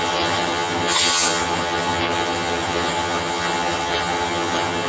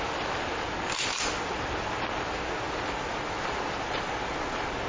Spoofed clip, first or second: first